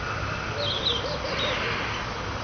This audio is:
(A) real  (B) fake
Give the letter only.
A